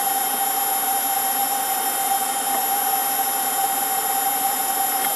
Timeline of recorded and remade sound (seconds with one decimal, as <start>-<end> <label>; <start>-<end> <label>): 0.0-5.2 recorded